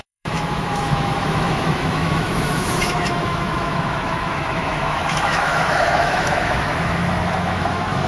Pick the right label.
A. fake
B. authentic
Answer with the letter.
A